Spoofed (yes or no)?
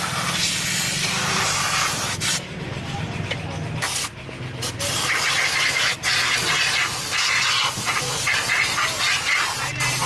no